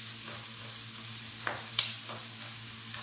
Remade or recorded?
recorded